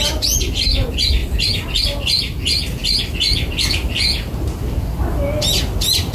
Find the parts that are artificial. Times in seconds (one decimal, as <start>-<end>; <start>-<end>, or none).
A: none